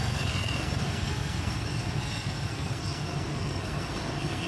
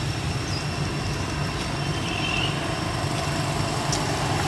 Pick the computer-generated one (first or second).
first